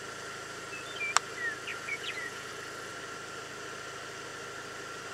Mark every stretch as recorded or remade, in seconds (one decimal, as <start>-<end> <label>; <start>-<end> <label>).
0.0-1.7 recorded; 1.7-2.5 remade; 2.5-5.1 recorded

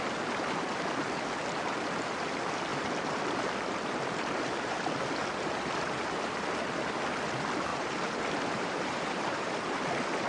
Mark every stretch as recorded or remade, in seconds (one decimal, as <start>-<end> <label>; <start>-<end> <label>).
0.0-7.7 recorded; 7.7-9.9 remade; 9.9-10.3 recorded

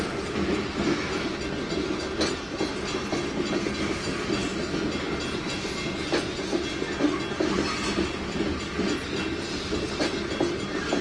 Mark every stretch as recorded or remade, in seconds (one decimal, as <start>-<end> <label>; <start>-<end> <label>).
0.0-11.0 recorded

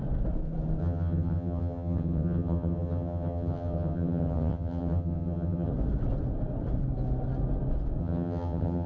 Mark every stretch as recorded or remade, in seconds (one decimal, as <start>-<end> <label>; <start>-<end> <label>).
0.0-0.8 recorded; 0.8-5.7 remade; 5.7-8.0 recorded; 8.0-8.9 remade

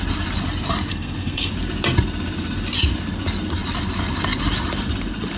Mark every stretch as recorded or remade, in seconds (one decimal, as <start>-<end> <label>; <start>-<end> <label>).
0.0-0.9 recorded; 0.9-1.5 remade; 1.5-5.4 recorded

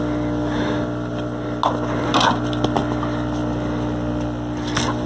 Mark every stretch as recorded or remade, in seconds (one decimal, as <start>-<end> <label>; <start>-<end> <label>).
0.0-5.1 recorded

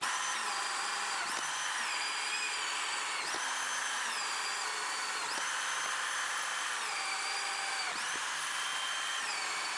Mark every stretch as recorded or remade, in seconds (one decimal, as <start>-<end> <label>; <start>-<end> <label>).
0.0-3.7 recorded; 3.7-7.8 remade; 7.8-9.8 recorded